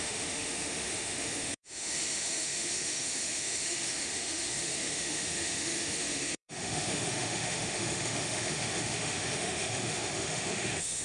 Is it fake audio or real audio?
fake